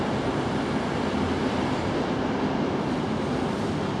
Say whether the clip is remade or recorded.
recorded